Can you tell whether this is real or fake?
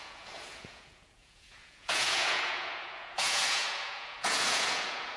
fake